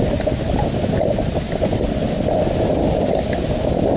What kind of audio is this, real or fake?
real